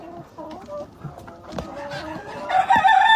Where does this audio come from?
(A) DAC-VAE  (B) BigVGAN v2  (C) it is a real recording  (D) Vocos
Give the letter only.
C